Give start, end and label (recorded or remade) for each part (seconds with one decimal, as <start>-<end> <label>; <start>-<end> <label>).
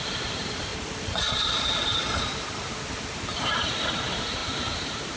0.0-0.7 remade; 0.7-2.2 recorded; 2.2-5.2 remade